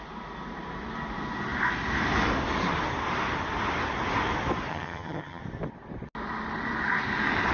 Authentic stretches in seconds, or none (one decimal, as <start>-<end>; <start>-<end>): 0.0-4.7; 5.4-7.5